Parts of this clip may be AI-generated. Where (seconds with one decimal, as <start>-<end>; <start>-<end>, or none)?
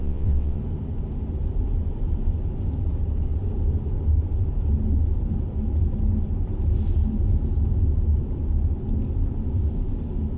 0.0-0.6